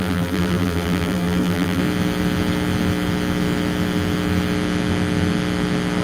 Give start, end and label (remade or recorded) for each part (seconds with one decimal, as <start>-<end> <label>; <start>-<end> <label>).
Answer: 0.0-1.8 remade; 1.8-6.0 recorded